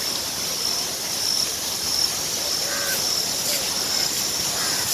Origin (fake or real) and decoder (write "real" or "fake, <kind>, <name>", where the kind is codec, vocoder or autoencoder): real